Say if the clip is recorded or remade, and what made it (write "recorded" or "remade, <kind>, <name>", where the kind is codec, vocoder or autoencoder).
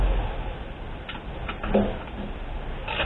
recorded